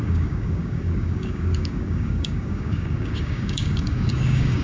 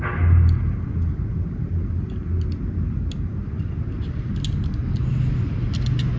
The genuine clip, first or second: second